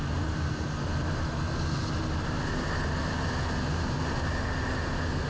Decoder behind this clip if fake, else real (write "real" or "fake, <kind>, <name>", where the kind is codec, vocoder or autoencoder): real